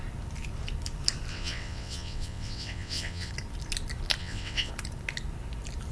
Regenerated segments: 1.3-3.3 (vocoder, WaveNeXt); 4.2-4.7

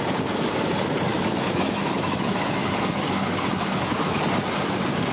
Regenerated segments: 1.1-4.2 (autoencoder, DAC-VAE)

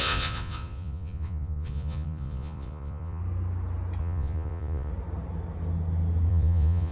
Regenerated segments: 0.0-3.2 (vocoder, Vocos); 4.0-4.9; 6.3-6.9

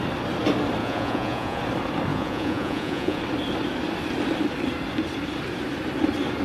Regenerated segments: 0.8-1.6 (vocoder, Vocos); 2.1-3.2

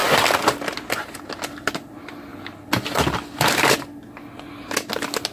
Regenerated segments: none

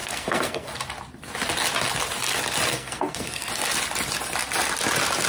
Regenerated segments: 0.0-0.7 (codec, SNAC); 2.7-3.5

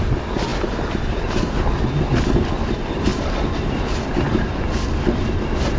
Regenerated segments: none